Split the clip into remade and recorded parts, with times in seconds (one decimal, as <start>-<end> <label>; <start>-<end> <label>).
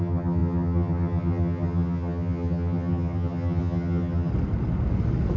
0.0-4.3 remade; 4.3-5.4 recorded